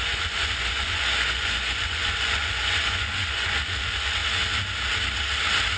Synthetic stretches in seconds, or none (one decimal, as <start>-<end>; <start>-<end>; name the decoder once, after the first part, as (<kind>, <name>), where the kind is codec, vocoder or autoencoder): 0.0-4.2 (vocoder, Vocos)